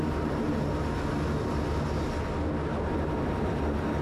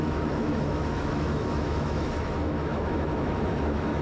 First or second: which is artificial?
second